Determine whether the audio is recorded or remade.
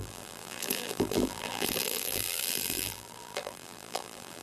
remade